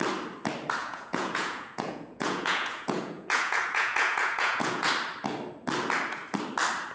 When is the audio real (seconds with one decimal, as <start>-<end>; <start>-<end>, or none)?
0.0-0.8; 4.9-6.9